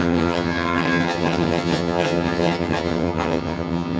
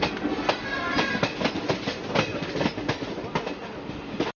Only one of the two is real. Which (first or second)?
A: second